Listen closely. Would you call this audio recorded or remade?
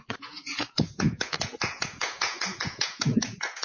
remade